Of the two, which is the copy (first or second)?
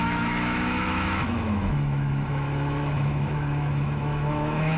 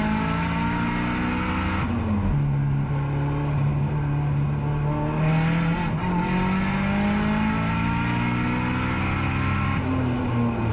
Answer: first